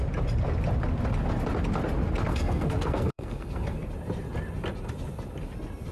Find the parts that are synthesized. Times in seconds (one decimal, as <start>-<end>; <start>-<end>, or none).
2.3-3.9